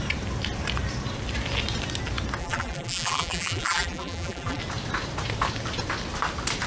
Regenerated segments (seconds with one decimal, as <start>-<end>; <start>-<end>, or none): 2.4-4.6